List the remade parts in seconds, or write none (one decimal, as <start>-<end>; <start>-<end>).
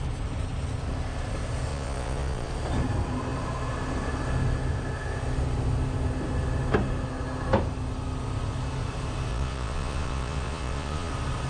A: 1.7-2.5; 9.3-11.1